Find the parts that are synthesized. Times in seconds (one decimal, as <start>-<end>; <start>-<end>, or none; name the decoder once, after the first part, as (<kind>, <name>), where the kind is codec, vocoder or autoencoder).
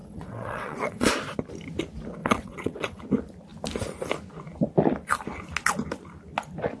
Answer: 0.0-1.1 (vocoder, WaveNeXt); 2.2-3.0